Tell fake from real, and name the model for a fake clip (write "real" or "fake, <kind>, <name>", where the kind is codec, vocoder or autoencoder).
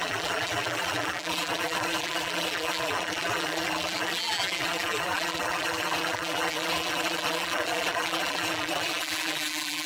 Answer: fake, vocoder, BigVGAN v2